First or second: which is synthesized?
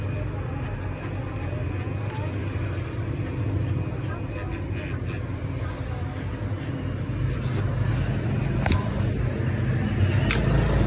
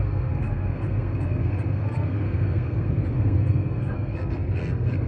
second